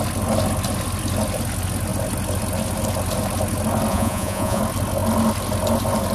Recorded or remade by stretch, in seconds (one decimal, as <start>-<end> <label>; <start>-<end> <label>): 0.0-3.9 recorded; 3.9-4.6 remade; 4.6-6.1 recorded